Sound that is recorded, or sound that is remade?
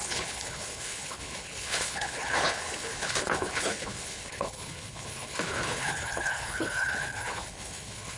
remade